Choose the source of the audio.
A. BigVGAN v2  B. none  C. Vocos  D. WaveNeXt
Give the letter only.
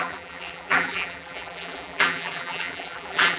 A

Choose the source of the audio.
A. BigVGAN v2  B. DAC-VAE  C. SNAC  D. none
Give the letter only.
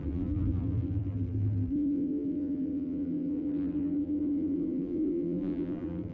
A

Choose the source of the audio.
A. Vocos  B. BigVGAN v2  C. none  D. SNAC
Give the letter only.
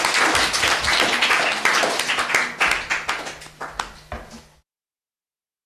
C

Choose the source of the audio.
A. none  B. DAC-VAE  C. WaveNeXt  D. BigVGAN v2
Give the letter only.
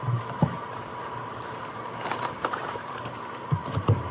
D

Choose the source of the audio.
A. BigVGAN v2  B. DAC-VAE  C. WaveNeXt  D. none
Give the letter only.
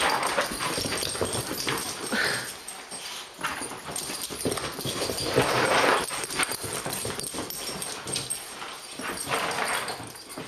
D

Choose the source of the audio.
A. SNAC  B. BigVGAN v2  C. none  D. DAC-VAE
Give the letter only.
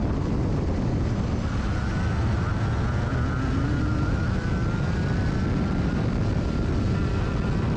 C